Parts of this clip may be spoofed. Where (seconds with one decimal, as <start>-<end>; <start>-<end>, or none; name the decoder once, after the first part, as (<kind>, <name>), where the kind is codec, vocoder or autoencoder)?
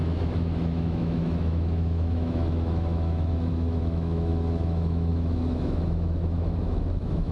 0.0-7.3 (autoencoder, DAC-VAE)